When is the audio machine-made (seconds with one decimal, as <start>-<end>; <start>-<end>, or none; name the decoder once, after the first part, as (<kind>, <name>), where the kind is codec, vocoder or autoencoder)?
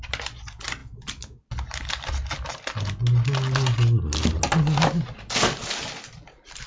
none